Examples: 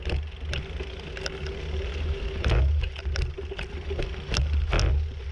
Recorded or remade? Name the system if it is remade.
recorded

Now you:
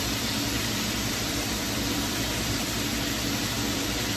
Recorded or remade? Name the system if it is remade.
remade, vocoder, BigVGAN v2